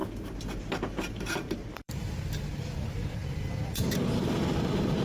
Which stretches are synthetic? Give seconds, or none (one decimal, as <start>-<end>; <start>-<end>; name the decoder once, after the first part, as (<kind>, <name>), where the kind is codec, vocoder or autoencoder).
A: 0.0-5.0 (vocoder, BigVGAN v2)